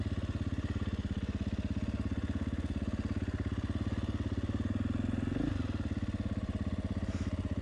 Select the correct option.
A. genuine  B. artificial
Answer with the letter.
A